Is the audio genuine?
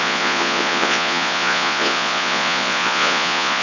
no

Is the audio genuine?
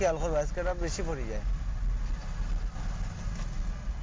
yes